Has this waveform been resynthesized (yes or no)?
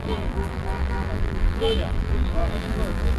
yes